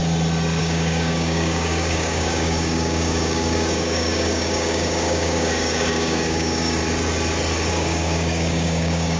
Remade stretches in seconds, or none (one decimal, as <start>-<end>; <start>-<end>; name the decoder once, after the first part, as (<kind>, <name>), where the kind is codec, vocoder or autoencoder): 0.6-6.8 (codec, DAC); 7.7-9.2